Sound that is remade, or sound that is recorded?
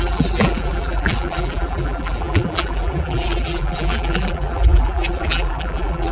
remade